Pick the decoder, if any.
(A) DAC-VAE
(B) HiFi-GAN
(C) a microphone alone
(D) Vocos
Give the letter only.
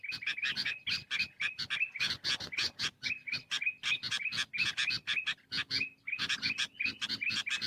C